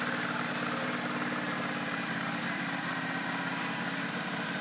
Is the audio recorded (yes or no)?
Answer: no